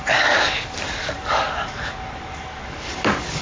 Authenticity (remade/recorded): remade